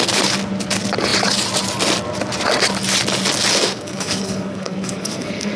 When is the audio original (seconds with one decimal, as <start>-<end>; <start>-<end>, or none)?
0.0-3.5